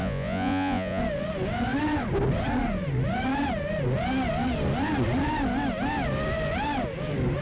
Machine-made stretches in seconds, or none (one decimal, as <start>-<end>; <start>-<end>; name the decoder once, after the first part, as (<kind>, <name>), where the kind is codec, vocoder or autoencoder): 0.0-1.0 (vocoder, Vocos)